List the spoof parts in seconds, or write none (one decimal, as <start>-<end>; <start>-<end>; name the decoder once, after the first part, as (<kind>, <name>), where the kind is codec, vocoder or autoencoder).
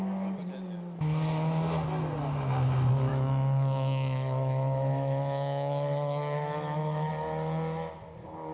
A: 3.1-7.1 (autoencoder, DAC-VAE)